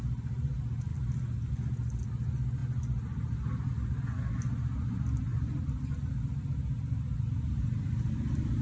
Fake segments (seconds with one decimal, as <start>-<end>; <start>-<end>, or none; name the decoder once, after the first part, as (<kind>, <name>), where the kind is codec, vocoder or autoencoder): none